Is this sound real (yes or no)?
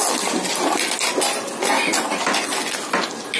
yes